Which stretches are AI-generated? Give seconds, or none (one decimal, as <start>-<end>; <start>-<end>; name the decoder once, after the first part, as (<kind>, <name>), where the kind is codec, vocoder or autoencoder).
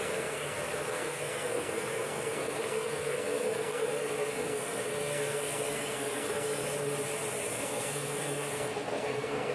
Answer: 0.0-6.6 (codec, SNAC); 7.5-9.5